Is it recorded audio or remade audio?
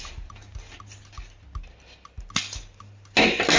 recorded